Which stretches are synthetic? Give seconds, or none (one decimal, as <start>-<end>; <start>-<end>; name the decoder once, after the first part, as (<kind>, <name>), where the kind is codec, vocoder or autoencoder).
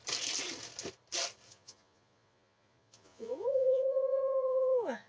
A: 1.5-5.1 (vocoder, Vocos)